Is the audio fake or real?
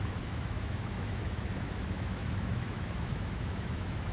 fake